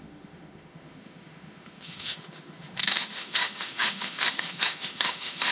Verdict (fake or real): fake